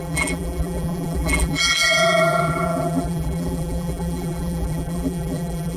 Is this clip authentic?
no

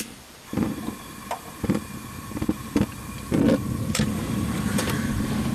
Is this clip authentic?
no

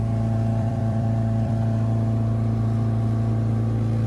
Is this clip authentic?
no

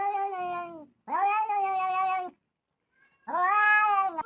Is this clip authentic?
yes